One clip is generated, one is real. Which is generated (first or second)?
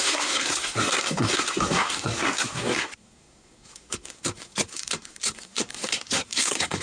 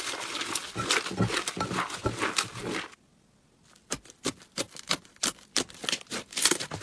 first